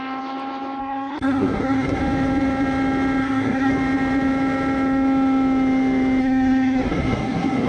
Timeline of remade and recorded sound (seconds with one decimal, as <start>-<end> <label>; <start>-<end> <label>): 0.0-0.8 recorded; 0.8-2.0 remade; 2.0-3.2 recorded; 3.2-3.7 remade; 3.7-6.2 recorded; 6.2-7.7 remade